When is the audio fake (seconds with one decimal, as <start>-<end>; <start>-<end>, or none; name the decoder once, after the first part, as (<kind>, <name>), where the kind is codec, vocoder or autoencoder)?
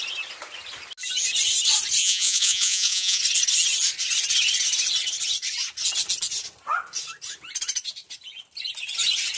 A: 2.0-3.2 (vocoder, Vocos)